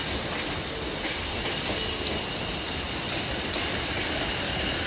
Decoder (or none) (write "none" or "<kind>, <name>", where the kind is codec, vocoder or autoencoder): none